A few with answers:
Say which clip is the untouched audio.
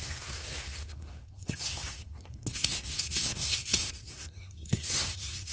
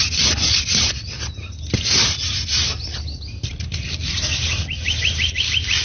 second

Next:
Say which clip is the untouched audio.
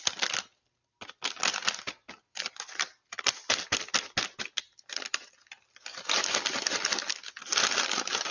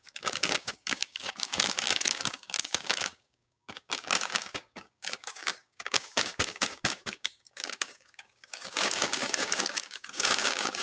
first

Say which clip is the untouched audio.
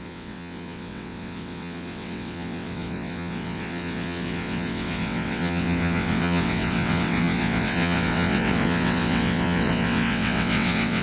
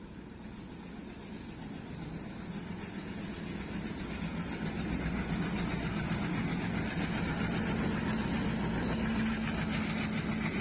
second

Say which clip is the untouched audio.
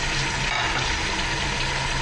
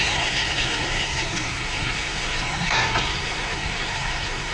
first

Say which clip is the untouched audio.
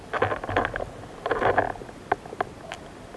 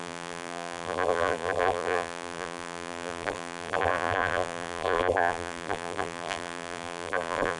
first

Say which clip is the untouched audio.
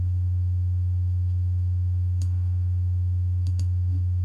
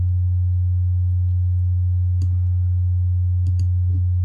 second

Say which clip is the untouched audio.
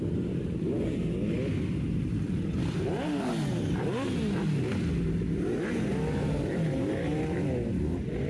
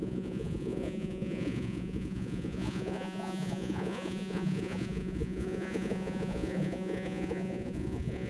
first